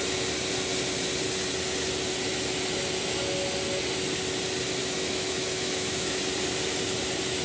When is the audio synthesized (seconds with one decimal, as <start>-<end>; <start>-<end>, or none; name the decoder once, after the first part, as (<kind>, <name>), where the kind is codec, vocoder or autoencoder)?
4.8-6.2 (autoencoder, DAC-VAE)